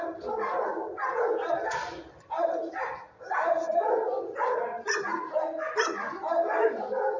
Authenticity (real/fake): real